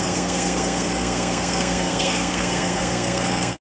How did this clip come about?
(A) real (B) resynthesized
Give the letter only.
B